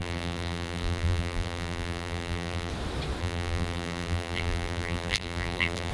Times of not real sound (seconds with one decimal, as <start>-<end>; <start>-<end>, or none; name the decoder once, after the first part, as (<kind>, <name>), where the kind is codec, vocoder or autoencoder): 0.0-2.7 (vocoder, BigVGAN v2); 3.2-5.9